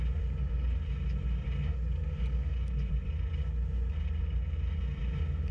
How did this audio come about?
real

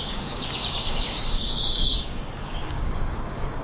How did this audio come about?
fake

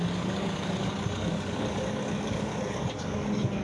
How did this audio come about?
fake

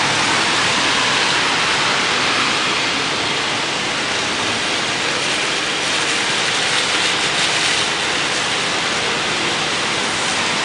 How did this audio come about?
real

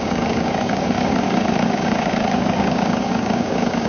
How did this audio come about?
fake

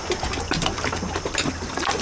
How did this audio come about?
real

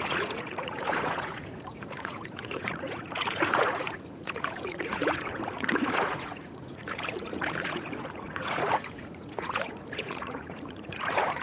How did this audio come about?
fake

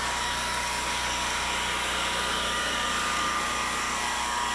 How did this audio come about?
fake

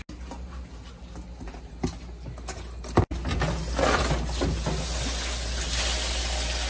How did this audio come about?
real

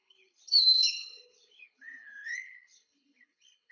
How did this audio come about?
fake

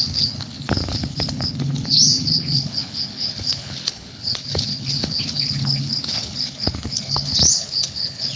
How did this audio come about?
fake